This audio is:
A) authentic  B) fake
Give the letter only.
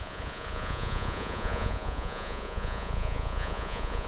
B